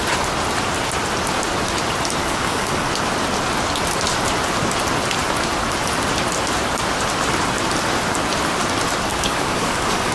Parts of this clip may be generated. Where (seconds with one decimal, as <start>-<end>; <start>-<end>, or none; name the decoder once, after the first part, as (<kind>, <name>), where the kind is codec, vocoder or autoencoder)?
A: 2.2-2.9 (codec, DAC); 9.1-10.1